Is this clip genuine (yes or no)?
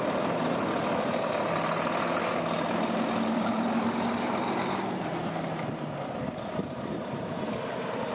yes